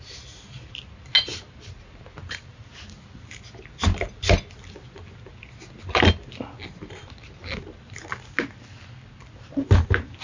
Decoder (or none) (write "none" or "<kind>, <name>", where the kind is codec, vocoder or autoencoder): none